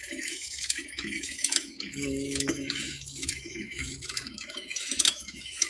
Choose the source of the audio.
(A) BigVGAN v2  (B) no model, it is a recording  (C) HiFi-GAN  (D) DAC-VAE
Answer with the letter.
D